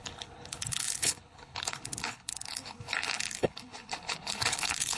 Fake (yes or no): yes